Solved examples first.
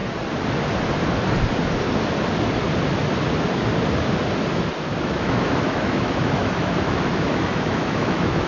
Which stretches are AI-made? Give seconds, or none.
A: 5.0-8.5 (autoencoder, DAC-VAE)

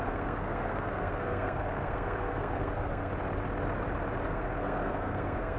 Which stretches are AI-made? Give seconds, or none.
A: 0.0-3.1 (codec, SNAC); 4.2-5.6

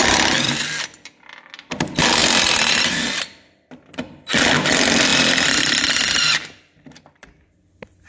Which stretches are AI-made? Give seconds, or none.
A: 0.0-8.1 (vocoder, BigVGAN v2)